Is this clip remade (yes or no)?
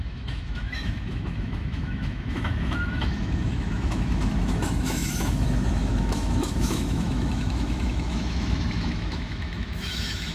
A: yes